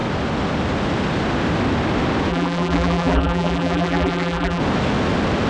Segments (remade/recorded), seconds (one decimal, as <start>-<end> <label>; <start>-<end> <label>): 0.0-2.3 recorded; 2.3-4.6 remade; 4.6-5.5 recorded